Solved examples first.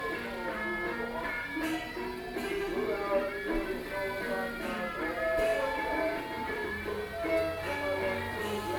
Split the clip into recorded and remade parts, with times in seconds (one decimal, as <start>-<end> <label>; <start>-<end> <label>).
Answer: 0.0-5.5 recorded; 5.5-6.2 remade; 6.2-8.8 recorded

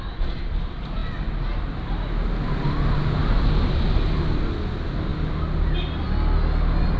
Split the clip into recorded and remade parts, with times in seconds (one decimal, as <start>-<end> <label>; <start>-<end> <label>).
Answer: 0.0-7.0 recorded

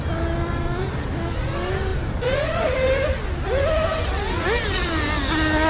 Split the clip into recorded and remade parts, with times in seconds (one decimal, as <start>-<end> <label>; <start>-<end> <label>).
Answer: 0.0-5.7 recorded

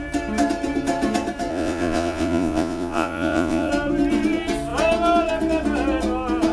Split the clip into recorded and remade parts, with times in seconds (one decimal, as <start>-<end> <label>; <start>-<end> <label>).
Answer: 0.0-1.5 recorded; 1.5-3.7 remade; 3.7-6.5 recorded

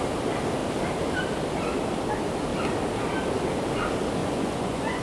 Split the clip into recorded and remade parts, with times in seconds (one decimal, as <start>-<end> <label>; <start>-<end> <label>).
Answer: 0.0-4.2 recorded; 4.2-5.0 remade

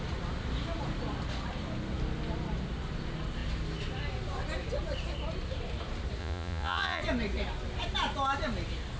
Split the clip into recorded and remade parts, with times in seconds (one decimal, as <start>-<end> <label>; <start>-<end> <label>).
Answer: 0.0-6.2 recorded; 6.2-7.0 remade; 7.0-9.0 recorded